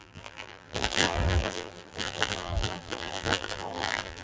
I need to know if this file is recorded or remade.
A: remade